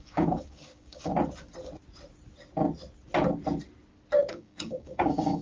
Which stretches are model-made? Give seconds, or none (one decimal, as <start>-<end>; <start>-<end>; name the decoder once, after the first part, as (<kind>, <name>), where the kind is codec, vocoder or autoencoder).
0.0-1.1 (codec, DAC); 4.3-5.4